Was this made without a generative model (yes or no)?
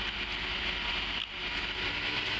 yes